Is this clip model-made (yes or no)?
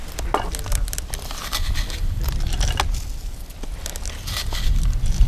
no